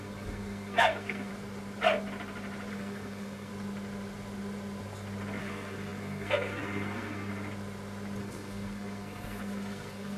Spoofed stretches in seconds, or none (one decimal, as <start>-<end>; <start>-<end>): 0.0-1.3; 2.7-3.5; 5.4-7.3; 8.2-10.2